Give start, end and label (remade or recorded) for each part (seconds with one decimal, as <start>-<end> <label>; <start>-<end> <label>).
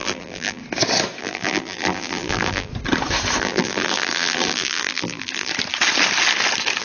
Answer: 0.0-0.6 remade; 0.6-1.2 recorded; 1.2-2.7 remade; 2.7-3.4 recorded; 3.4-5.5 remade; 5.5-6.8 recorded